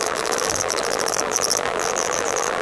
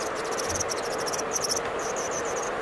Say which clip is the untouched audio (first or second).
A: second